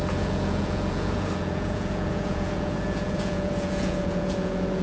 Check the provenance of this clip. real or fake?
fake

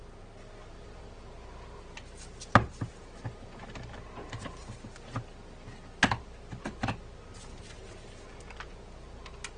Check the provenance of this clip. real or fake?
real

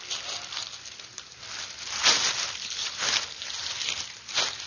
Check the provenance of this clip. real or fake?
real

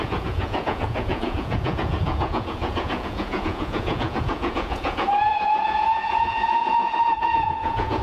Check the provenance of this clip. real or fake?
fake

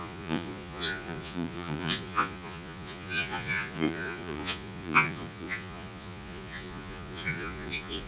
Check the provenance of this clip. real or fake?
fake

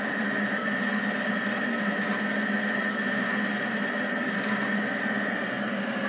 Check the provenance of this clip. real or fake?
real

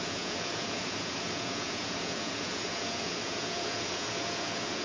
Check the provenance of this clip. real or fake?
fake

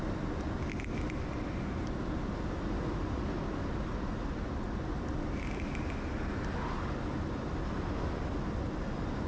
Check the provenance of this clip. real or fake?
real